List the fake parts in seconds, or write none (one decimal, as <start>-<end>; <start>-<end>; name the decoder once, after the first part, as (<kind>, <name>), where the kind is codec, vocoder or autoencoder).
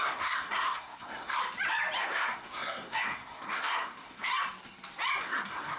0.0-1.4 (codec, SNAC); 2.0-4.3; 5.2-5.8